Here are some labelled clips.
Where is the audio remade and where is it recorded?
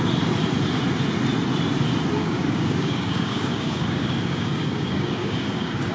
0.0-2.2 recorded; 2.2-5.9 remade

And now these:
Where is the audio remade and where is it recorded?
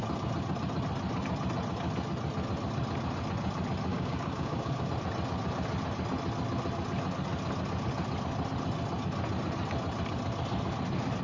0.0-3.9 recorded; 3.9-4.9 remade; 4.9-11.2 recorded